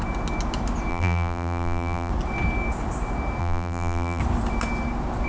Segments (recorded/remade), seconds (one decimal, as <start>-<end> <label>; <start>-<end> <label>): 0.0-0.9 recorded; 0.9-2.1 remade; 2.1-3.4 recorded; 3.4-4.2 remade; 4.2-5.3 recorded